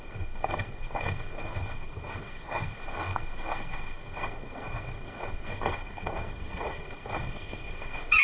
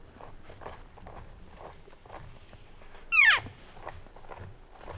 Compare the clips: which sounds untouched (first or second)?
second